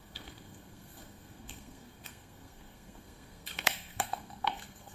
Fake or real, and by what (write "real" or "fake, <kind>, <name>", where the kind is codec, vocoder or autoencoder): fake, codec, SNAC